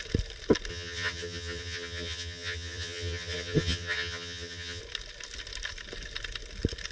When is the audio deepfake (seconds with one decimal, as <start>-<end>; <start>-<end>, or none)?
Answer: 0.7-4.8